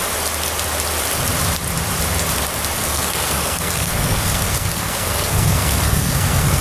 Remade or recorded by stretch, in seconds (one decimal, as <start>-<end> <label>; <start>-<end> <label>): 0.0-2.8 recorded; 2.8-6.6 remade